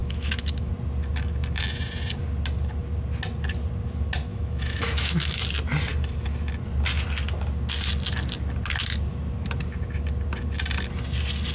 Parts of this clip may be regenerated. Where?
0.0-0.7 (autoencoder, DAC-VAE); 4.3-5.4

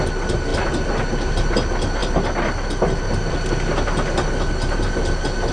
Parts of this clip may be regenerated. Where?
none